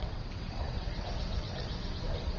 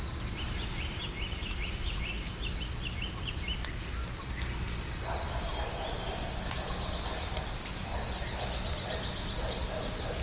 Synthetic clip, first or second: first